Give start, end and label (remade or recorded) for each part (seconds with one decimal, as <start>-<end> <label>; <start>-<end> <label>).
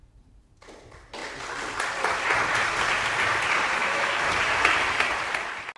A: 0.0-3.8 recorded; 3.8-4.3 remade; 4.3-5.8 recorded